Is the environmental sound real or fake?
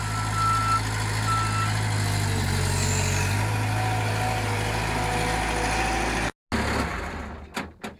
real